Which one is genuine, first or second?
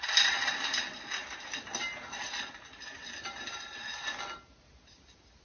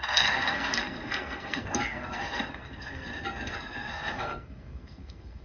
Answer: first